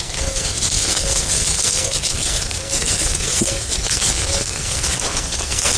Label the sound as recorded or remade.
remade